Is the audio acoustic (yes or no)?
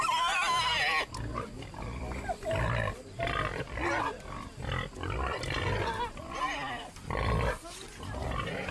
yes